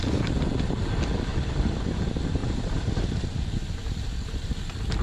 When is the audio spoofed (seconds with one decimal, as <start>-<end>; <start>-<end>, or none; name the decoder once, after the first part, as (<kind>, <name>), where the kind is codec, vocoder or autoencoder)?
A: 1.3-2.0 (vocoder, BigVGAN v2); 2.4-3.0